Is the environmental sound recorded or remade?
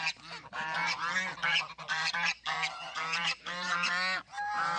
remade